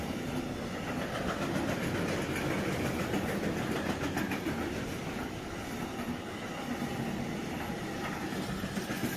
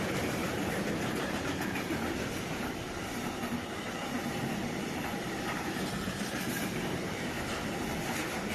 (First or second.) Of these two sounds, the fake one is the second